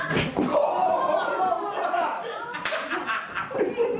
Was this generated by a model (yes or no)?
yes